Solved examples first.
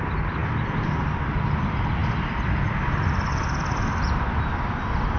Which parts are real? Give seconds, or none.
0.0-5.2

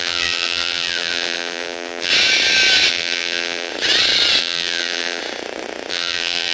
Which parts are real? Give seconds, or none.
2.1-2.9; 3.7-4.4; 5.2-5.9

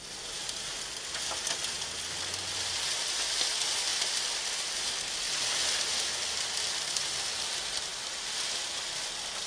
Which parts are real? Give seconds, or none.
0.0-9.5